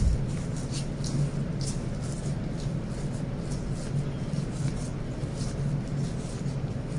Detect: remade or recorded recorded